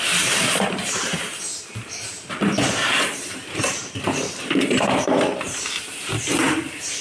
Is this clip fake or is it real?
fake